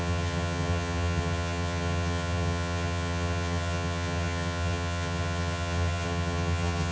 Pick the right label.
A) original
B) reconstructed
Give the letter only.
B